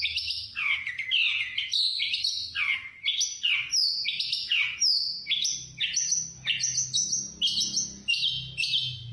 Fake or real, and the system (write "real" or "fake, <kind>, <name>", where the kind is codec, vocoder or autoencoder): real